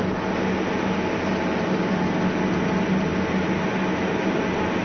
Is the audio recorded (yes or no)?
yes